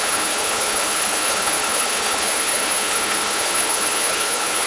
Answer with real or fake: fake